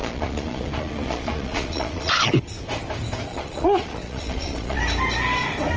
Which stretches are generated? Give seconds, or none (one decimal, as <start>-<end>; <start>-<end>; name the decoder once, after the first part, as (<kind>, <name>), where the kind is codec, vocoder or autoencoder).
0.0-2.3 (vocoder, Vocos); 3.3-4.8